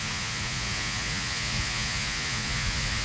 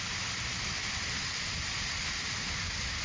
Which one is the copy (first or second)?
first